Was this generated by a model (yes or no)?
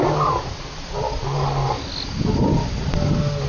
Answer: no